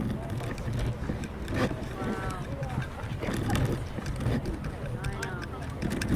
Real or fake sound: real